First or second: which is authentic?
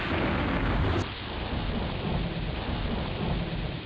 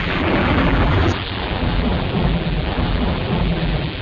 first